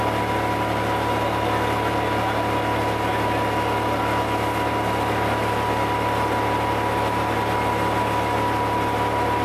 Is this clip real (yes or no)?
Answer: yes